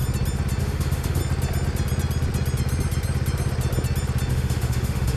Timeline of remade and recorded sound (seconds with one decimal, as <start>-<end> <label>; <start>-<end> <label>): 0.0-0.6 recorded; 0.6-1.2 remade; 1.2-4.3 recorded; 4.3-5.2 remade